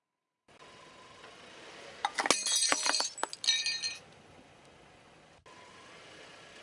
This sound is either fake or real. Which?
real